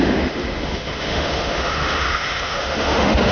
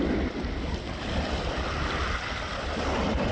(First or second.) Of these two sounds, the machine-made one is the first